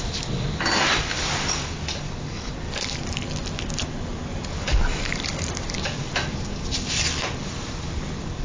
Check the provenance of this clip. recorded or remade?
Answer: recorded